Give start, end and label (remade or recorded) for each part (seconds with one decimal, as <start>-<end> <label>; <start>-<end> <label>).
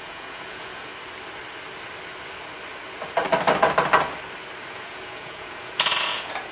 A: 0.0-0.9 remade; 0.9-4.7 recorded; 4.7-6.5 remade